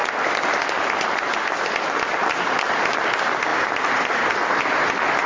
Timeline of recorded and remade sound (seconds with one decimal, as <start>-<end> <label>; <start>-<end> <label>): 0.0-3.5 recorded; 3.5-4.3 remade; 4.3-5.3 recorded

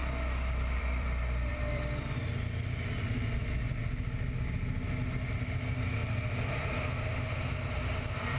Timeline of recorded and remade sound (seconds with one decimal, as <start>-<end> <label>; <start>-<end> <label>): 0.0-2.1 remade; 2.1-8.4 recorded